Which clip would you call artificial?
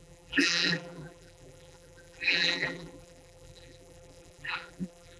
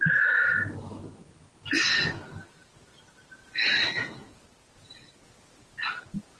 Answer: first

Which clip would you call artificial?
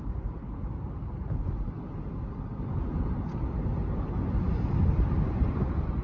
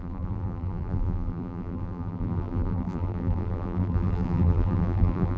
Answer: second